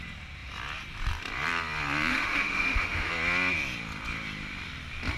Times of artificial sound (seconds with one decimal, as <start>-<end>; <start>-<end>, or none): 2.1-3.1